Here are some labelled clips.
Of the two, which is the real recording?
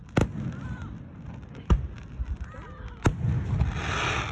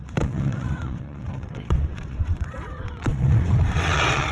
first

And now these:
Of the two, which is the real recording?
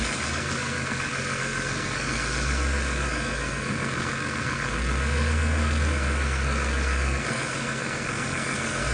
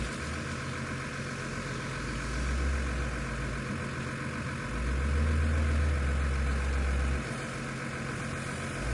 second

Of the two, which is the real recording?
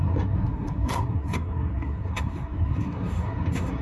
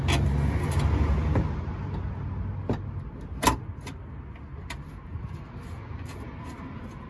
second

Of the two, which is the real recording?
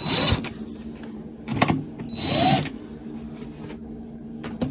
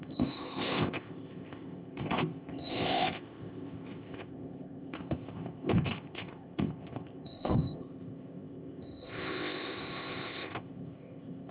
first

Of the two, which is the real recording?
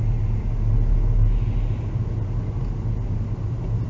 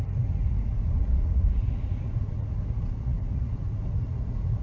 first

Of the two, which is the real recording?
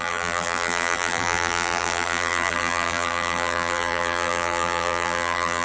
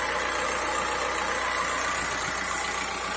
second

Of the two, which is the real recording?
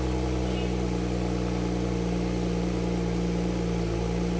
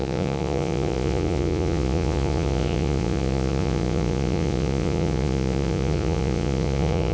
first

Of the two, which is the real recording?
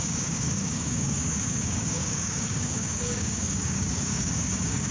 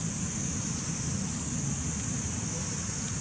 second